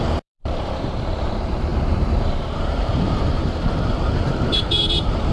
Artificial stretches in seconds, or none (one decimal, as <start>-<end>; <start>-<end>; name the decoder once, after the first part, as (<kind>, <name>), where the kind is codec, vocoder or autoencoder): 0.0-5.3 (vocoder, BigVGAN v2)